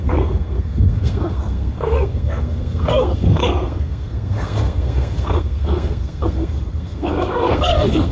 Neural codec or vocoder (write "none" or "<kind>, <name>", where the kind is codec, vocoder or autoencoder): codec, SNAC